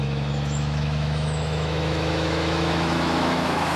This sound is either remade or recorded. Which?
remade